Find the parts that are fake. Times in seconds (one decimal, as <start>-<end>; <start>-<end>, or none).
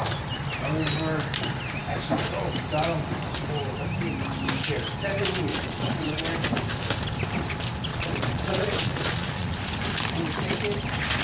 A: 5.5-6.2; 7.9-9.7